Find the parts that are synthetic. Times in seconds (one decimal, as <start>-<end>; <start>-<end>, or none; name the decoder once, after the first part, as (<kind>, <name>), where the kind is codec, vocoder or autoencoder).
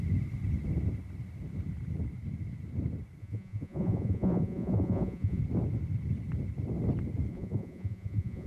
3.2-5.4 (vocoder, Vocos); 7.3-8.5